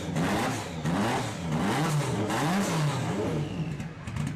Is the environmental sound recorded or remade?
recorded